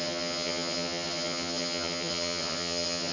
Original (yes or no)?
no